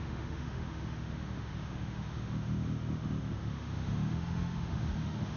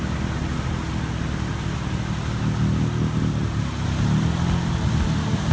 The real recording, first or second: second